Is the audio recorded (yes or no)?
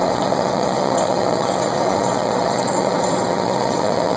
no